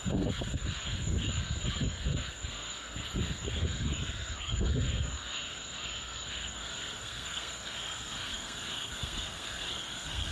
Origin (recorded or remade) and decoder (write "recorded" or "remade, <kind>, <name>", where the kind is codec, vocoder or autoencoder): remade, codec, SNAC